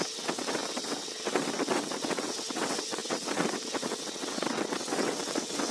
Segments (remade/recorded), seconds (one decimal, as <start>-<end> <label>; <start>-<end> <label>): 0.0-5.7 remade